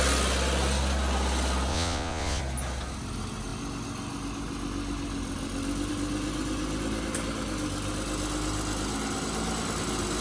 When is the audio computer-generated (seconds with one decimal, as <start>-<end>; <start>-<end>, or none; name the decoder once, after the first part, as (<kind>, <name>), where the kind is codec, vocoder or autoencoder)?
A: 1.7-2.4 (vocoder, Vocos)